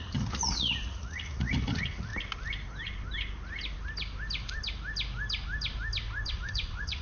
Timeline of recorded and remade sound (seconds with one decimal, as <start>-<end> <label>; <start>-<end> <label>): 0.0-2.1 remade; 2.1-6.3 recorded; 6.3-7.0 remade